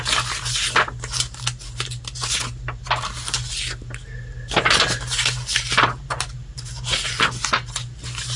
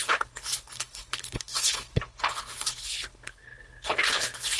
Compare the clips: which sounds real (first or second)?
first